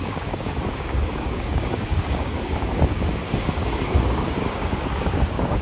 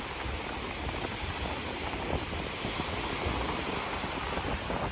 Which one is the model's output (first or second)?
first